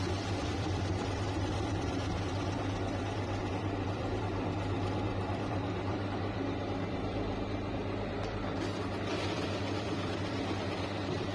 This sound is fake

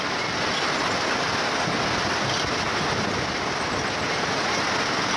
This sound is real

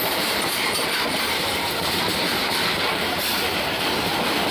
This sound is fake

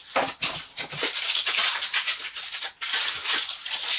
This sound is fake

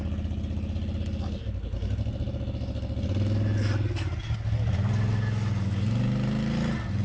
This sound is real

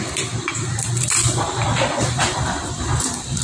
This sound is fake